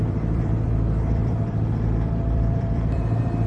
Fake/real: fake